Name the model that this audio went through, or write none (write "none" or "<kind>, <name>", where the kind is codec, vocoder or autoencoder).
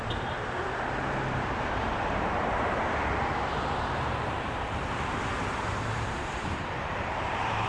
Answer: vocoder, BigVGAN v2